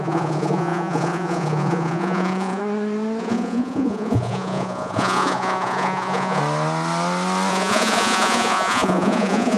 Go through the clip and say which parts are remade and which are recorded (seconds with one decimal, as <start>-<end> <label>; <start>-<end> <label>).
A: 0.0-2.6 remade; 2.6-3.2 recorded; 3.2-6.4 remade; 6.4-7.5 recorded; 7.5-9.6 remade